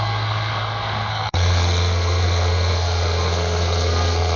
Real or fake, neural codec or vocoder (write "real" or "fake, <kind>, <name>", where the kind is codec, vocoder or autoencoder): fake, codec, SNAC